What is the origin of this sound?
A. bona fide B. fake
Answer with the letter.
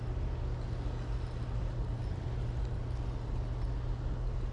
A